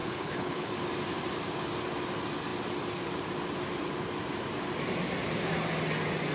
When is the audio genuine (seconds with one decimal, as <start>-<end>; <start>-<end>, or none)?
0.7-6.3